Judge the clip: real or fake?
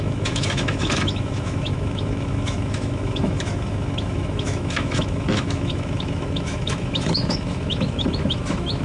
fake